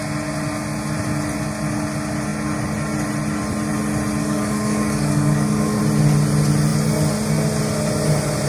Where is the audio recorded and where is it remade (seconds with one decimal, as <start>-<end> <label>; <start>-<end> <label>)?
0.0-4.2 recorded; 4.2-5.8 remade; 5.8-8.5 recorded